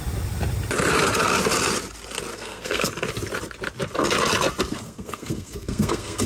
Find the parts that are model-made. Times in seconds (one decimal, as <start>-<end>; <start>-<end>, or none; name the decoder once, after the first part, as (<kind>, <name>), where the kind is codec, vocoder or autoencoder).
2.3-2.9 (codec, SNAC); 4.7-6.3